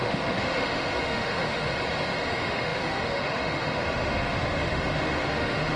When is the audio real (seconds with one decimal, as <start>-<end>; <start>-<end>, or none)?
1.7-2.2